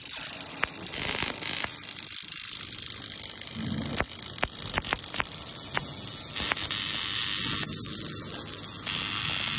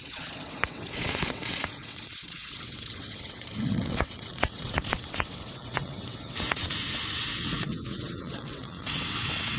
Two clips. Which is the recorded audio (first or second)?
first